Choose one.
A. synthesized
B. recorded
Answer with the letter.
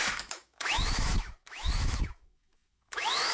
A